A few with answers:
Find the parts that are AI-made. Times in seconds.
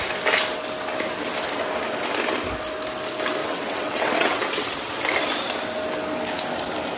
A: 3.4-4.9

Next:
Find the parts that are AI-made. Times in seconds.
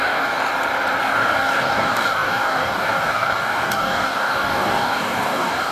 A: 0.0-0.5; 1.0-5.7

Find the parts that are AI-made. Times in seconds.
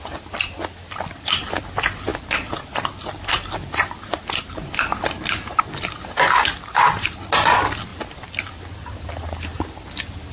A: none